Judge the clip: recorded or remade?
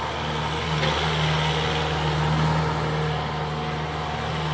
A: recorded